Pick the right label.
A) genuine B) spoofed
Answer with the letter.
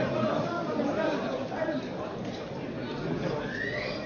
A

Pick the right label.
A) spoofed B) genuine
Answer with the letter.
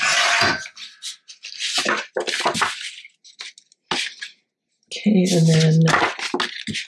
B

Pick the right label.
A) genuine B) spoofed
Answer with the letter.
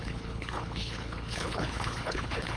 B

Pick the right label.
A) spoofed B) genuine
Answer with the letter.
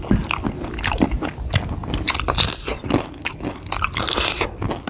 B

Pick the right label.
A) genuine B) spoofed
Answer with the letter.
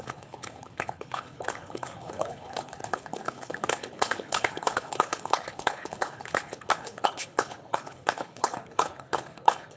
B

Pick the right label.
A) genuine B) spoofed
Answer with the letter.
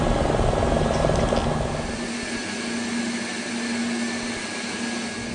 A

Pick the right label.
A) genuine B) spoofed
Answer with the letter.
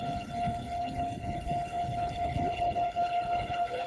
B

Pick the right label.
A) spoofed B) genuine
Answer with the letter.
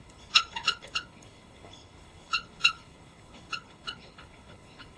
A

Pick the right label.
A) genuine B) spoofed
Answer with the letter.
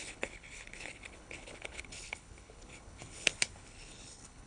B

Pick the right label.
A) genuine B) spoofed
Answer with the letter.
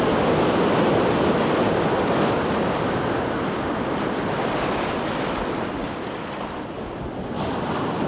A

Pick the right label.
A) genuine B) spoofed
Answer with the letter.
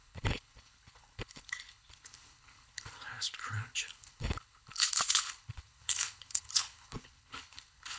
B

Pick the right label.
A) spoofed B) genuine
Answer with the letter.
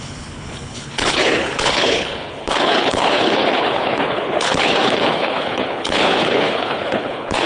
A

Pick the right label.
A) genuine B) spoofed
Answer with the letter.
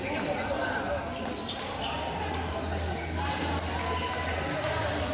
A